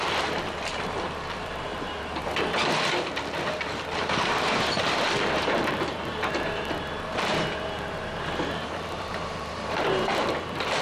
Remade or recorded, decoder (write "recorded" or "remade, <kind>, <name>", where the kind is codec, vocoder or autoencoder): remade, vocoder, BigVGAN v2